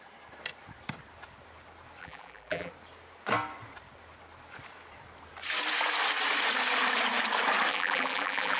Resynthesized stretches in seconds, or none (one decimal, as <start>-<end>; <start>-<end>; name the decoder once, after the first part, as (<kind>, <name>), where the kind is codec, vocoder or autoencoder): 2.0-2.7 (vocoder, BigVGAN v2); 7.7-8.6